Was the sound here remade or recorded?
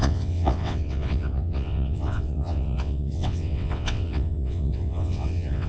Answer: remade